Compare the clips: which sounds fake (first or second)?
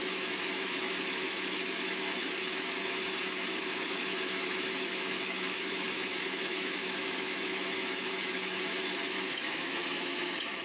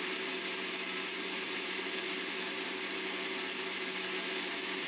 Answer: first